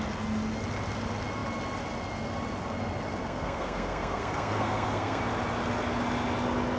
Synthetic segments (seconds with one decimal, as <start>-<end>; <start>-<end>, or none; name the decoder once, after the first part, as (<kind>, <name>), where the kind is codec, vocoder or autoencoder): 3.2-5.2 (codec, SNAC)